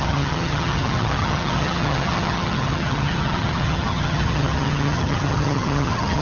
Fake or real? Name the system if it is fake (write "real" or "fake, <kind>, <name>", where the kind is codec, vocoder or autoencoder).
fake, vocoder, HiFi-GAN